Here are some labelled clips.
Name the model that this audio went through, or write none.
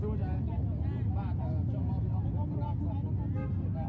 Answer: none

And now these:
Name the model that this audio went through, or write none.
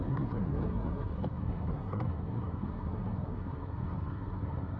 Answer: codec, SNAC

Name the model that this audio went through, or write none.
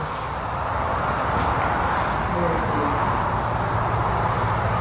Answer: none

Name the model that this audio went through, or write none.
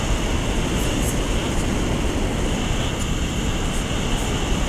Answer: none